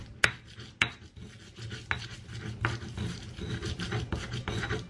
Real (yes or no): yes